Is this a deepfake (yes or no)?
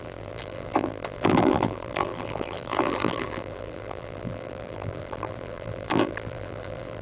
yes